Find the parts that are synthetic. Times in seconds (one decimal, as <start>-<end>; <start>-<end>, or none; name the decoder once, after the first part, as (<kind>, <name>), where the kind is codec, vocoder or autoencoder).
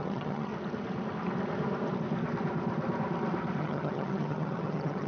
0.0-0.5 (vocoder, HiFi-GAN); 3.6-5.1